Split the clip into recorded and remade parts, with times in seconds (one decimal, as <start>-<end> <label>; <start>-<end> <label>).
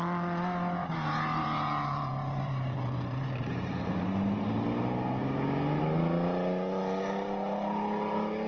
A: 0.0-0.8 recorded; 0.8-3.8 remade; 3.8-8.5 recorded